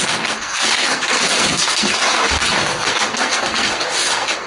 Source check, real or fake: fake